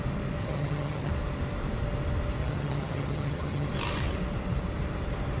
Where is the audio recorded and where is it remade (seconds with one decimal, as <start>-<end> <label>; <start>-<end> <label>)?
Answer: 0.0-0.4 recorded; 0.4-1.1 remade; 1.1-2.4 recorded; 2.4-3.7 remade; 3.7-5.4 recorded